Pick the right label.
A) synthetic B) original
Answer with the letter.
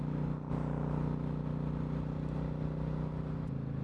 B